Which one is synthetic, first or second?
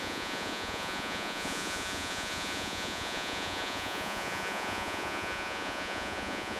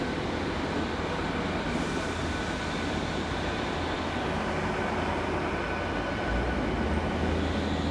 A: first